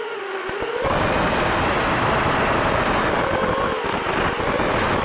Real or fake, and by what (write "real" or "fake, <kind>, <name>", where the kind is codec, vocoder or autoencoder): real